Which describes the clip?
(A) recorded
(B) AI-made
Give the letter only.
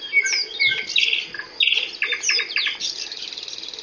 A